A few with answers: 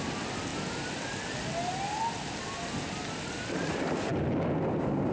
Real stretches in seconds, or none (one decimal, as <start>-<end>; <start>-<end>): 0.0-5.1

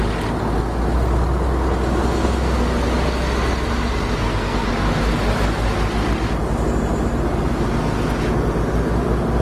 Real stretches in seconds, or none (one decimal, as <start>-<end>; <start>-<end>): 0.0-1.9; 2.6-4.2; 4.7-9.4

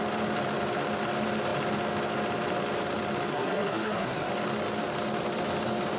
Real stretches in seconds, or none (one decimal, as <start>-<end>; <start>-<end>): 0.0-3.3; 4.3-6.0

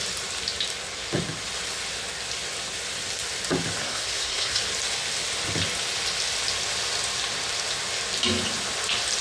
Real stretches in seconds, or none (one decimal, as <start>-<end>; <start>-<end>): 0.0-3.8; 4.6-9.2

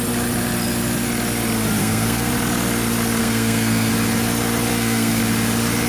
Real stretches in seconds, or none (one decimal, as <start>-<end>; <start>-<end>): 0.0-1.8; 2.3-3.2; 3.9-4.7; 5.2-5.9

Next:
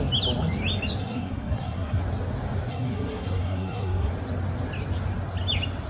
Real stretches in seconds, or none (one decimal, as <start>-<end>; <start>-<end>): 0.0-1.0; 2.0-2.7; 4.1-5.9